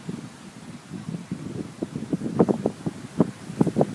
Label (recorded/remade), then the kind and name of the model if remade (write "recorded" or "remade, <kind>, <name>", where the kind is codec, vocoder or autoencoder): recorded